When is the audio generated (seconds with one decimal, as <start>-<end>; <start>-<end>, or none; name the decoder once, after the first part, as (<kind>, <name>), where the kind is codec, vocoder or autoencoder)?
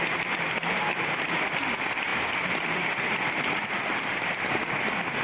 none